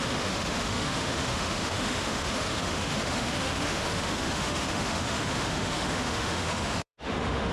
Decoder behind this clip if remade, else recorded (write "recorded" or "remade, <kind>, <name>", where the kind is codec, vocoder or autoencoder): remade, autoencoder, DAC-VAE